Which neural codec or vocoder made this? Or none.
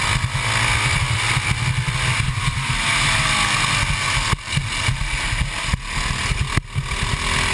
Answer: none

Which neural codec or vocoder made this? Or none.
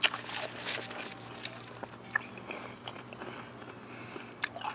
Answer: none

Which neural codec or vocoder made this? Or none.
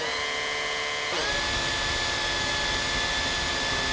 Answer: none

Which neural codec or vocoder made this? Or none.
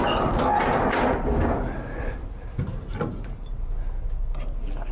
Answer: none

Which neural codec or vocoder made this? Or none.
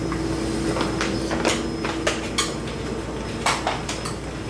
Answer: none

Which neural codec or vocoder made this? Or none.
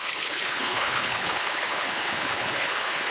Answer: codec, HILCodec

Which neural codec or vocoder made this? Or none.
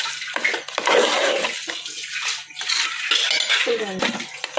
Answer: none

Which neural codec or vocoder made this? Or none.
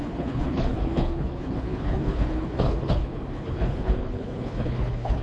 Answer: codec, HILCodec